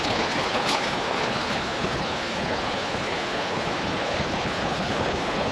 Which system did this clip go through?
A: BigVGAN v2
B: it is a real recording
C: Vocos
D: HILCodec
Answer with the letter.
D